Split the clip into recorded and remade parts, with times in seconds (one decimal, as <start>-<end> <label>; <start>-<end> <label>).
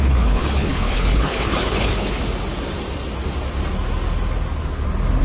0.0-2.2 remade; 2.2-5.2 recorded